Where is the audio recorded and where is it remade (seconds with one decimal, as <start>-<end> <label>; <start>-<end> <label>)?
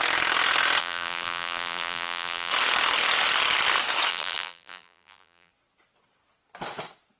0.0-0.8 recorded; 0.8-2.5 remade; 2.5-4.1 recorded; 4.1-5.5 remade; 5.5-7.2 recorded